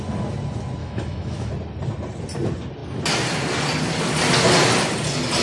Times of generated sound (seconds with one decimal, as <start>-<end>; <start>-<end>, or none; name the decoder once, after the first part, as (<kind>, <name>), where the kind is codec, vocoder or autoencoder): 0.8-1.5 (autoencoder, DAC-VAE)